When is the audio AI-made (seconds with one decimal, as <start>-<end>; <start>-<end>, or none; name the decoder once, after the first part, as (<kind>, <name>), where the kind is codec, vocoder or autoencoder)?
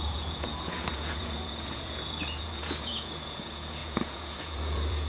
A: 0.0-5.1 (vocoder, Vocos)